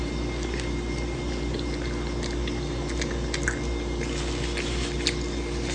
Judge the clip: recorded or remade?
recorded